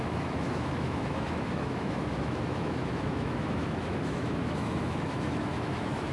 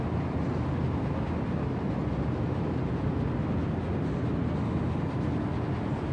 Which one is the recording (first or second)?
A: second